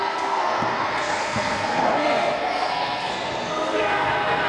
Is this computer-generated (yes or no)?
yes